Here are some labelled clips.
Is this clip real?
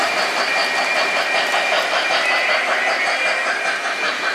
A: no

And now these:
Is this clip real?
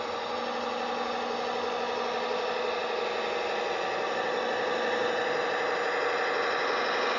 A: yes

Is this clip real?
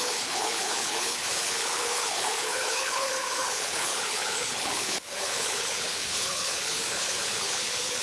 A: no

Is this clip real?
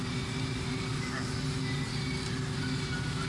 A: yes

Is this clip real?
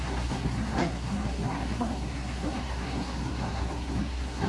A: no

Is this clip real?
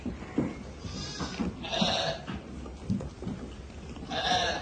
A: yes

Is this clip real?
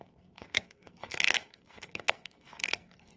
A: no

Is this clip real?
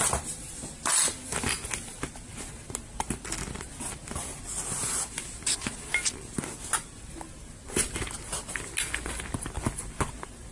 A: yes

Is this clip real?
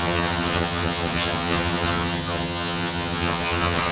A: no